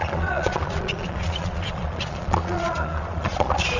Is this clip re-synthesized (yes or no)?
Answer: yes